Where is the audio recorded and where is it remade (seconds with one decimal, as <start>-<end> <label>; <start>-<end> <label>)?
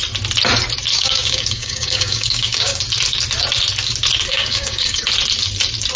0.0-0.9 recorded; 0.9-2.8 remade; 2.8-4.3 recorded; 4.3-5.0 remade; 5.0-6.0 recorded